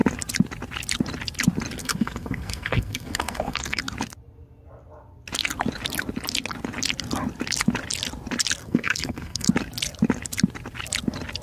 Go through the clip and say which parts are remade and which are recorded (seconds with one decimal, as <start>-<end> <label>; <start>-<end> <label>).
0.0-1.8 recorded; 1.8-3.8 remade; 3.8-8.6 recorded; 8.6-9.5 remade; 9.5-11.4 recorded